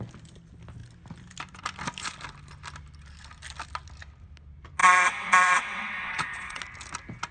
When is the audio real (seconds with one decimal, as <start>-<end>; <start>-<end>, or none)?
0.0-4.8; 6.6-7.3